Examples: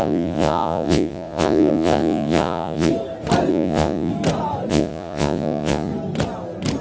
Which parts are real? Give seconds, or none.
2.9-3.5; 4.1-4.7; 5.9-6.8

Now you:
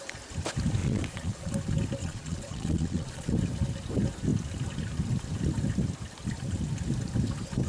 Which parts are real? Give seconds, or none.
0.0-0.8; 1.5-2.0; 3.3-7.7

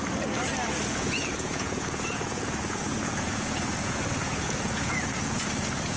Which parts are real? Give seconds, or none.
0.0-0.9

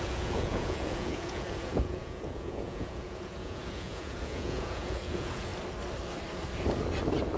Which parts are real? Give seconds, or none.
5.5-7.4

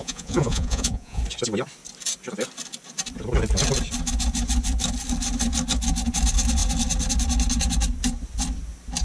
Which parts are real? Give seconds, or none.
1.2-9.0

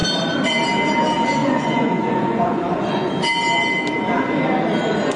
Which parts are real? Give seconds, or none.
0.0-1.4; 3.1-5.2

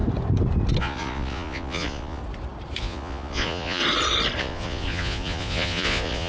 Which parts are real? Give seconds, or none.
0.0-0.8; 2.2-2.8; 3.8-4.4